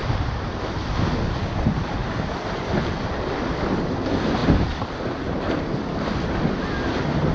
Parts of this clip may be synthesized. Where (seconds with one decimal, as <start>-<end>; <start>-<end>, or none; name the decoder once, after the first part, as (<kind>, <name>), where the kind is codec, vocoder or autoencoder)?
0.0-0.6 (vocoder, BigVGAN v2); 2.0-3.0; 4.4-6.4